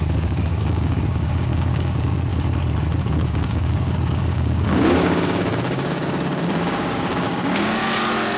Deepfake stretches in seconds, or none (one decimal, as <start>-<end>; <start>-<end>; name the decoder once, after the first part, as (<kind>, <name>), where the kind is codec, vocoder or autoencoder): 0.0-2.3 (codec, DAC); 3.1-7.8